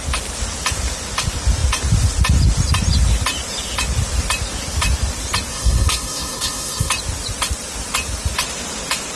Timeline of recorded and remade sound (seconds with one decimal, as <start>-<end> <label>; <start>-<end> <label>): 0.0-5.5 recorded; 5.5-6.9 remade; 6.9-9.2 recorded